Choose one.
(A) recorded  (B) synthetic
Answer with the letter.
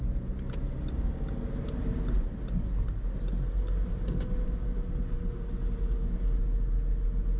A